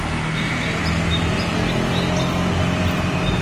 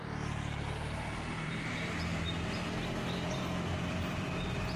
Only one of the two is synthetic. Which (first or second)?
second